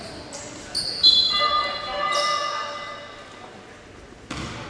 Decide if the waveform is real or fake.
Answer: real